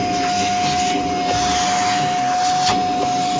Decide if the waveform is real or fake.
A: real